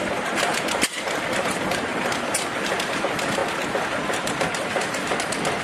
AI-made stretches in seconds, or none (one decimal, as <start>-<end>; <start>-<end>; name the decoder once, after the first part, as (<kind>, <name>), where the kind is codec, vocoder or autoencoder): 0.0-3.4 (vocoder, BigVGAN v2); 4.1-5.6